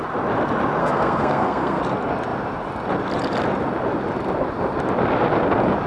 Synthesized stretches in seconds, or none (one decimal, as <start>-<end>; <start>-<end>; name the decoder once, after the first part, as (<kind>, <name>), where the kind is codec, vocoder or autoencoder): 0.8-1.8 (codec, SNAC)